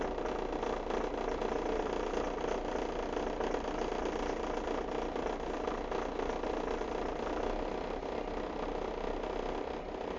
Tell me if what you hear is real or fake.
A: real